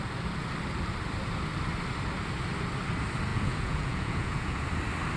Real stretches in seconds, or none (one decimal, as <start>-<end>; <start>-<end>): 0.0-3.3; 4.7-5.2